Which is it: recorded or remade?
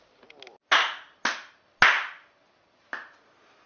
recorded